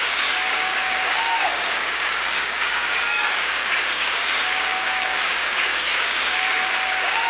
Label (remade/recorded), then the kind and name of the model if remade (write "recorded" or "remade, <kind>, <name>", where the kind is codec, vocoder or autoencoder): remade, codec, DAC